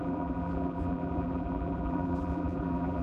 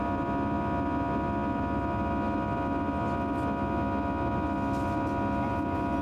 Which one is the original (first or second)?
second